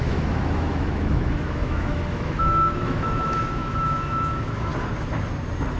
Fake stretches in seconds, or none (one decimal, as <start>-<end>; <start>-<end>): 0.0-4.7